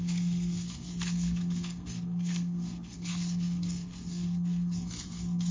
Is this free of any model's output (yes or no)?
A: no